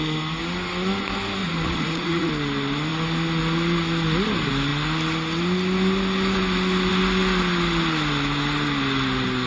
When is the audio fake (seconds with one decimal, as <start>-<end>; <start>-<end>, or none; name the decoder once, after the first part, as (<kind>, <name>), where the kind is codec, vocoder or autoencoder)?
1.4-2.3 (vocoder, Vocos)